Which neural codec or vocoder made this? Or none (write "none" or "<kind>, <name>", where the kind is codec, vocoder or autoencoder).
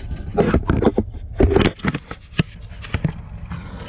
none